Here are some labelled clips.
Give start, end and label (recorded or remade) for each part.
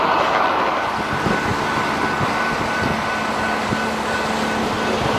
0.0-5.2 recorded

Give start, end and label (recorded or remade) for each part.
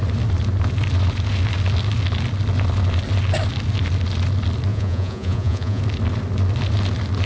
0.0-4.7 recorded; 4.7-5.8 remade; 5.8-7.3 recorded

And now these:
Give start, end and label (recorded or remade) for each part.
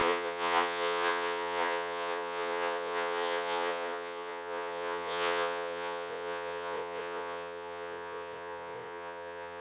0.0-9.6 remade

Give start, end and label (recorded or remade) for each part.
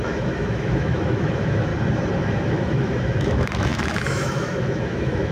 0.0-1.7 remade; 1.7-2.2 recorded; 2.2-5.3 remade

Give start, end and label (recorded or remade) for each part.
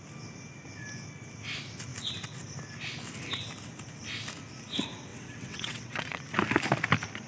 0.0-5.1 recorded; 5.1-6.2 remade; 6.2-7.3 recorded